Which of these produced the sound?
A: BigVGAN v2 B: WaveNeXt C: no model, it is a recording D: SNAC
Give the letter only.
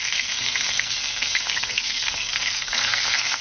D